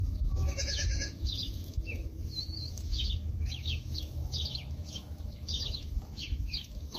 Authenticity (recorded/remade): remade